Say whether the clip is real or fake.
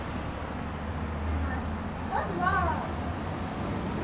real